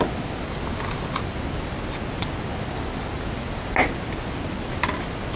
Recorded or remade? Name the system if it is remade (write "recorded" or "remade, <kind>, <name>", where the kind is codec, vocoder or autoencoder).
recorded